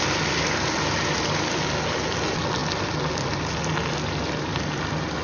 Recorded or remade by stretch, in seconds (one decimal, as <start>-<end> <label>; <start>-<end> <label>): 0.0-5.2 recorded